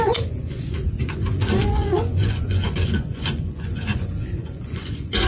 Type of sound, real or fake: fake